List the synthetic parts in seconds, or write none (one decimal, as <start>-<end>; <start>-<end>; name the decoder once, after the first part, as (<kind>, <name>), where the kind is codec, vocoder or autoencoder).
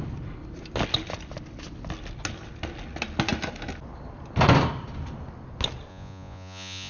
5.9-6.9 (vocoder, Vocos)